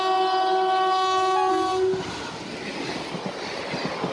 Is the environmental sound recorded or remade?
recorded